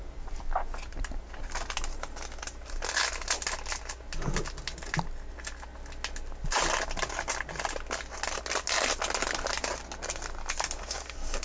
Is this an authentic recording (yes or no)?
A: yes